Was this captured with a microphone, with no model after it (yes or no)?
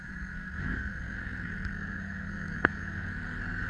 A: no